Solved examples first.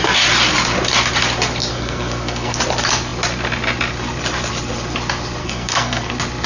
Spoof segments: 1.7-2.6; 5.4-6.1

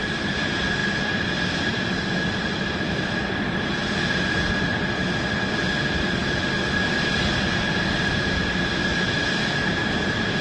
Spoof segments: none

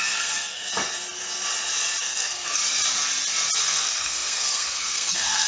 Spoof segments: 0.0-0.7; 2.0-2.6; 3.6-5.5

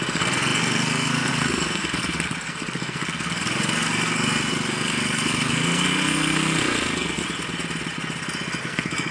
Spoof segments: 0.0-7.2; 8.6-9.1

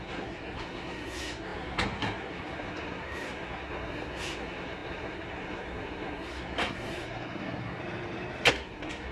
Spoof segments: 0.0-7.8; 8.5-9.1